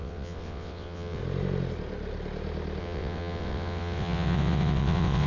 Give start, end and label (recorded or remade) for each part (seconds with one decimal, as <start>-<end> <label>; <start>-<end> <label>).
0.0-1.2 remade; 1.2-2.8 recorded; 2.8-5.3 remade